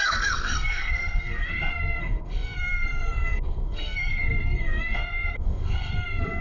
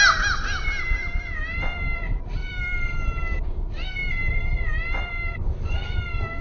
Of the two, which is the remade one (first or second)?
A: first